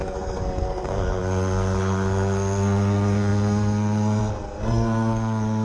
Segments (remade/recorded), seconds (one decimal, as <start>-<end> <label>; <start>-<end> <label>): 0.0-5.6 remade